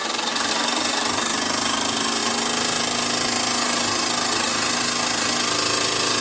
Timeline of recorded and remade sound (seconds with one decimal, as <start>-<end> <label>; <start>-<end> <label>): 0.0-6.2 recorded